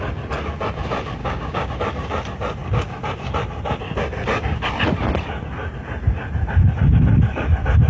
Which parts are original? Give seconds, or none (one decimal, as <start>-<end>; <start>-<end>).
0.0-1.2; 1.7-7.9

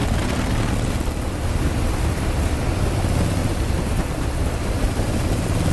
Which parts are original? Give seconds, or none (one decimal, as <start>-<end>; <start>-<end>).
0.0-3.4; 5.3-5.7

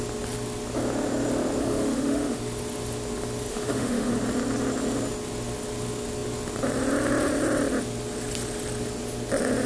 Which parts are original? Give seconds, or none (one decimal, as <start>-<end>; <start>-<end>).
0.0-1.6; 2.4-3.5; 4.1-9.7

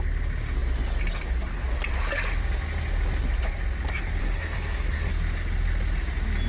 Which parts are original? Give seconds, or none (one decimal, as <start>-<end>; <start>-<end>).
0.0-4.2; 5.1-6.5